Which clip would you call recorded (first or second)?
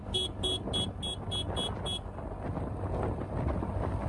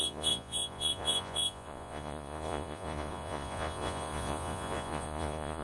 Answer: first